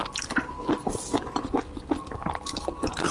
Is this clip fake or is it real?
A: real